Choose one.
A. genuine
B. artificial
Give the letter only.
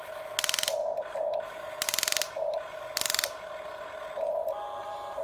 A